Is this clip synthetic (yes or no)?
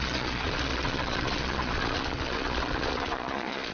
yes